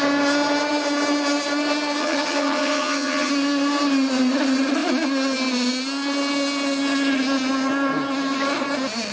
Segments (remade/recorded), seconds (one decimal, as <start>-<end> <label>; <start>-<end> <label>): 0.0-2.0 recorded; 2.0-3.3 remade; 3.3-9.1 recorded